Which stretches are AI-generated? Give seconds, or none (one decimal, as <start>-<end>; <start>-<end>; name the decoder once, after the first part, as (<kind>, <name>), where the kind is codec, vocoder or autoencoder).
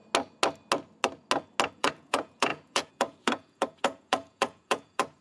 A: 1.7-5.2 (vocoder, Vocos)